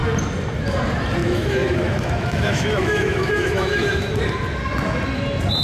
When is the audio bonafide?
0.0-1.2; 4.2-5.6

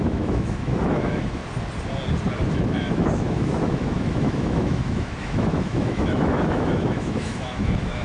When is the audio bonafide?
1.4-2.5

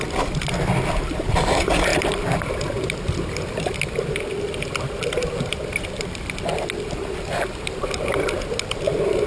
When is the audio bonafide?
0.0-9.3

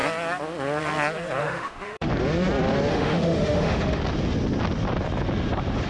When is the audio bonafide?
0.0-1.4; 2.1-2.9; 4.0-5.9